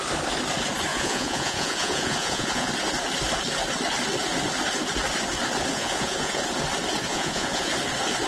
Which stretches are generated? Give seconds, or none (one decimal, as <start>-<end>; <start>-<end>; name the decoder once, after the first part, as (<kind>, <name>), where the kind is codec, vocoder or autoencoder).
0.9-2.7 (vocoder, Vocos); 5.7-6.4; 7.1-7.7